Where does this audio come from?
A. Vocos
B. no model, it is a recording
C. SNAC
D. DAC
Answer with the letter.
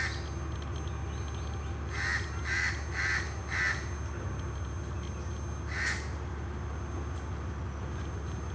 B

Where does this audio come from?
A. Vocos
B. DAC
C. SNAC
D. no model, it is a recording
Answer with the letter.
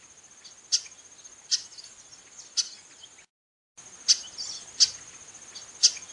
D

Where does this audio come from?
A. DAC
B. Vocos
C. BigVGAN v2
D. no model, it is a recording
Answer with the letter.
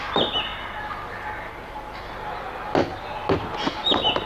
D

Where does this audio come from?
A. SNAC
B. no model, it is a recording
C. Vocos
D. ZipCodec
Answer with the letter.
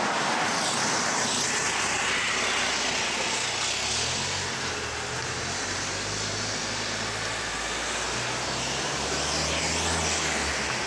B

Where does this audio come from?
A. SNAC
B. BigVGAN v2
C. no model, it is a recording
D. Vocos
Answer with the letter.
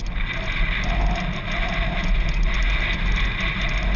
C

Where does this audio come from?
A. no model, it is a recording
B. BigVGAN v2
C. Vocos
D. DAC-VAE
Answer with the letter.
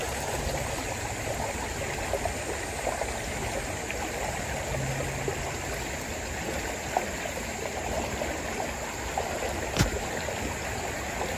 A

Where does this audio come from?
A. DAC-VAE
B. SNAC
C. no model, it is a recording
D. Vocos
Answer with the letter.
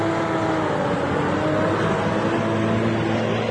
C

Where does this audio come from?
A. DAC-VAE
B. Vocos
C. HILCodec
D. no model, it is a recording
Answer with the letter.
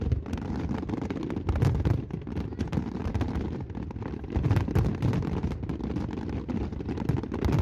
D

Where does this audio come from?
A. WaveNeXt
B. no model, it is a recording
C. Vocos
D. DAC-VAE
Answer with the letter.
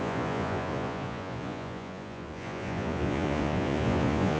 C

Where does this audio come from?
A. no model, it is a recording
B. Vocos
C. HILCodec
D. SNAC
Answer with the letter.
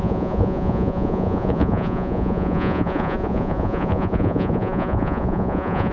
B